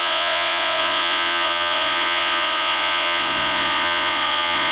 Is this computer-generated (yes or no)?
yes